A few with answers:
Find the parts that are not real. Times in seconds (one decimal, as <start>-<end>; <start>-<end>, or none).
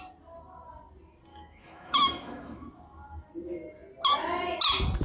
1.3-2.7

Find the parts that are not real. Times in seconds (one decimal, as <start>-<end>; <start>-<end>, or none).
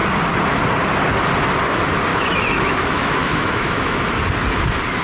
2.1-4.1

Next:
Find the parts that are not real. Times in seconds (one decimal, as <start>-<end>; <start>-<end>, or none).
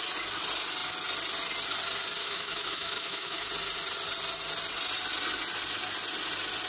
2.2-3.5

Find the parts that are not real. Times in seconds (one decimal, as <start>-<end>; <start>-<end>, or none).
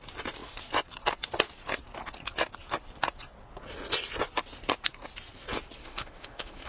5.8-6.7